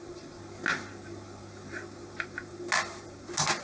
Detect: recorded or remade recorded